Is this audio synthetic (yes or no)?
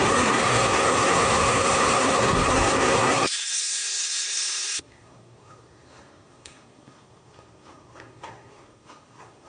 yes